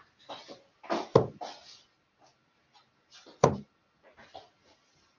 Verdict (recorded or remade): recorded